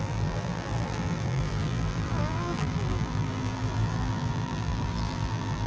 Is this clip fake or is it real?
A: fake